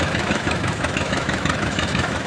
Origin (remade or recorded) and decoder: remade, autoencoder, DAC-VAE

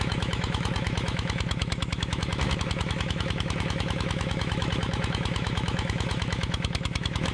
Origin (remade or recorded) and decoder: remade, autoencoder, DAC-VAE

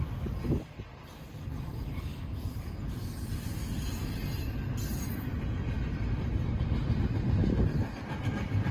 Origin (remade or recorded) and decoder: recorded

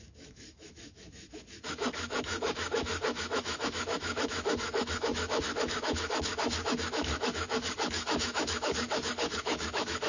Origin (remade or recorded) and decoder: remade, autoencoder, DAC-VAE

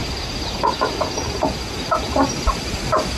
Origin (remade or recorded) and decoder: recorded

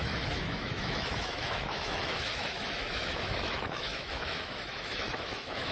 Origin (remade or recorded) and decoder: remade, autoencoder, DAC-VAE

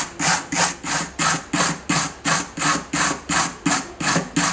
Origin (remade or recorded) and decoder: recorded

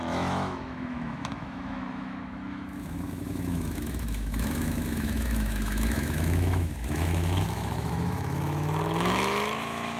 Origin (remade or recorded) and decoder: remade, autoencoder, DAC-VAE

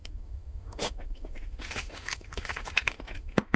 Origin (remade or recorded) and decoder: remade, autoencoder, DAC-VAE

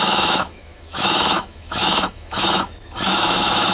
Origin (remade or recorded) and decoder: remade, autoencoder, DAC-VAE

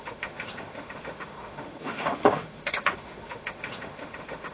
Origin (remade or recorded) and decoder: remade, autoencoder, DAC-VAE